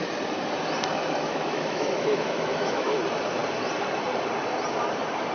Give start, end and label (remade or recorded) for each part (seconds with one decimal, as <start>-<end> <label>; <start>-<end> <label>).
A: 0.0-1.3 recorded; 1.3-2.9 remade; 2.9-5.3 recorded

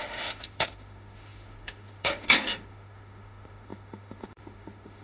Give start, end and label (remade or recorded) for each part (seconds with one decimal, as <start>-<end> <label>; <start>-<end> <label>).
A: 0.0-5.0 remade

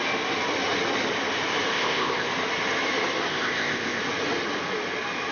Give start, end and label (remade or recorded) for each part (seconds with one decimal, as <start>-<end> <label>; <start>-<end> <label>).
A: 0.0-1.7 recorded; 1.7-2.3 remade; 2.3-3.3 recorded; 3.3-4.0 remade; 4.0-5.3 recorded

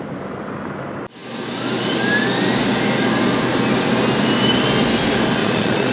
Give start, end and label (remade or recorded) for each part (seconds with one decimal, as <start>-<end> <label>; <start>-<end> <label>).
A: 0.0-5.4 recorded; 5.4-5.9 remade

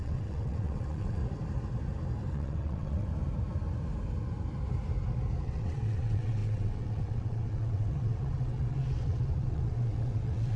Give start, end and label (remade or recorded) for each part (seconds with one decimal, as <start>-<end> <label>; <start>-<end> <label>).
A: 0.0-1.2 remade; 1.2-2.3 recorded; 2.3-3.1 remade; 3.1-5.4 recorded; 5.4-10.6 remade

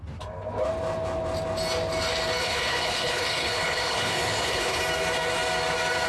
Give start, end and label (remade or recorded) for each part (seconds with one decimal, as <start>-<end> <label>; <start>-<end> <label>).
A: 0.0-2.4 recorded; 2.4-4.8 remade; 4.8-6.1 recorded

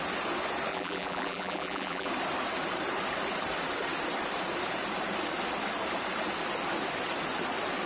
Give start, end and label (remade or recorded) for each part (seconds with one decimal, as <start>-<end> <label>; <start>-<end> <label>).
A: 0.0-0.7 recorded; 0.7-2.1 remade; 2.1-7.9 recorded